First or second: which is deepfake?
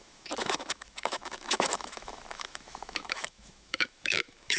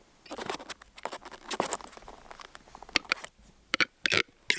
first